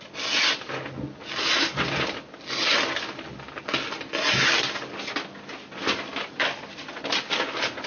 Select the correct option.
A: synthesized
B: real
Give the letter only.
B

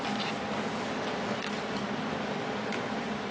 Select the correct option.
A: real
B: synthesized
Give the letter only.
A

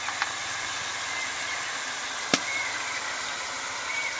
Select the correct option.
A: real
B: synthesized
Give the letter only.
A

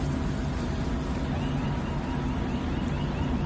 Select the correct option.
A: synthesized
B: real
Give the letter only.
B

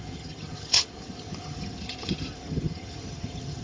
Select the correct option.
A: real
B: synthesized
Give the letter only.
B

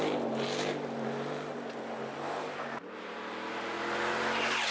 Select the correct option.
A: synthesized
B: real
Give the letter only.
B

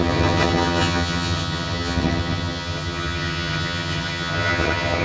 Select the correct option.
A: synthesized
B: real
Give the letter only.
A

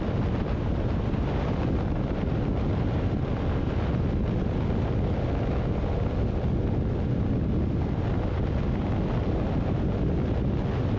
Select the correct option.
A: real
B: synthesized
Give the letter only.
A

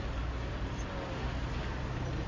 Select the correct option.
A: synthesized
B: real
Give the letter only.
B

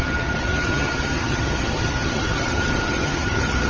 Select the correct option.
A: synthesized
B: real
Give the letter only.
A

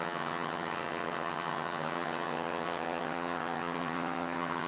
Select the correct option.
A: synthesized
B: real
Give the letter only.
A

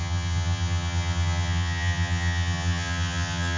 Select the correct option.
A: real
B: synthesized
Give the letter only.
B